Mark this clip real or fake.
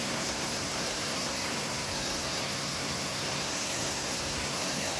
fake